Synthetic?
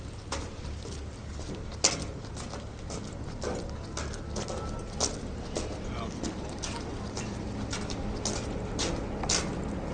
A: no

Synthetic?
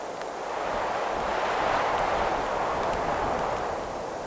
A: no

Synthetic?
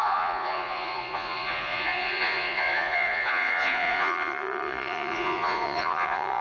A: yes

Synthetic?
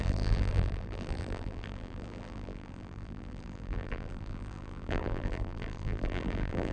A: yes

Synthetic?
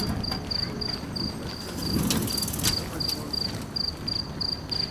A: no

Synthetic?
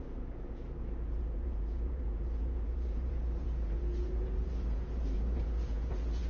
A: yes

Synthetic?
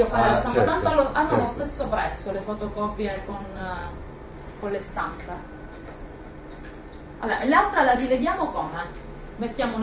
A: yes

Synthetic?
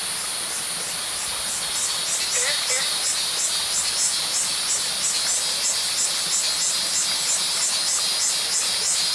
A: no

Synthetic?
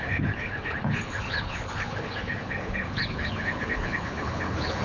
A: yes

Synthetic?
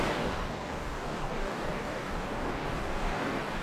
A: yes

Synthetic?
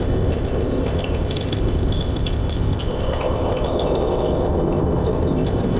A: yes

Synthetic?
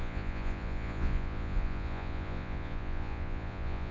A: yes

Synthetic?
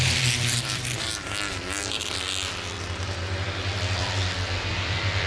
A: yes